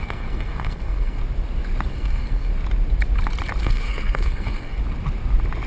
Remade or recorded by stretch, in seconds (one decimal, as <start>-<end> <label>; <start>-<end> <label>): 0.0-1.2 remade; 1.2-1.9 recorded; 1.9-2.5 remade; 2.5-3.6 recorded; 3.6-4.8 remade; 4.8-5.7 recorded